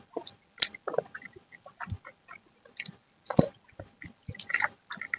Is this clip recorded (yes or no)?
yes